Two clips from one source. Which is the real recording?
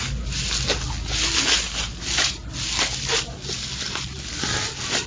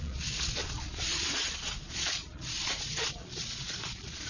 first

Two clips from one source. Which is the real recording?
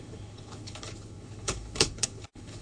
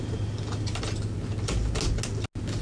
second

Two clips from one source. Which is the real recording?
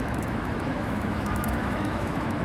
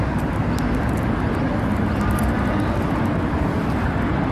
second